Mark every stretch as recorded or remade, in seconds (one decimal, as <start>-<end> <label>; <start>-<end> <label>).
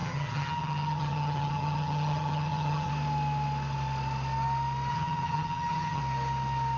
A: 0.0-2.9 remade; 2.9-4.9 recorded; 4.9-6.0 remade; 6.0-6.8 recorded